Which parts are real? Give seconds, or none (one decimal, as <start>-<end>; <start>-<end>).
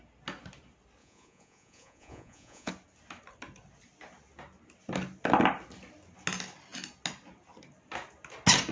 0.0-1.0; 2.7-8.7